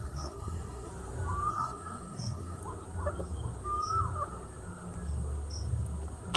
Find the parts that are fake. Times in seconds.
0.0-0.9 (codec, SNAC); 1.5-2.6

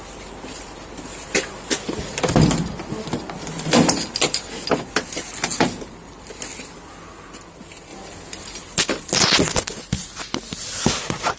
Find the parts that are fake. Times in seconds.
none

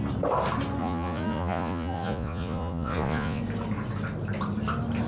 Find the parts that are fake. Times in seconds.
0.8-3.4 (vocoder, Vocos)